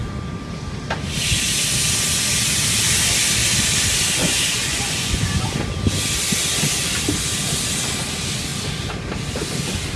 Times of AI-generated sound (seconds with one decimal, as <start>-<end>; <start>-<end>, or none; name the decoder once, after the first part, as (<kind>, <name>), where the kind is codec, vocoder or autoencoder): 4.2-5.4 (vocoder, Vocos)